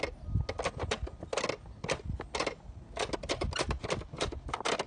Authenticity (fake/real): real